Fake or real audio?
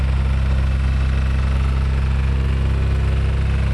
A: real